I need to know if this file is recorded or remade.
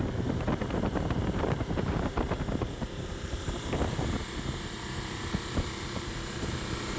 remade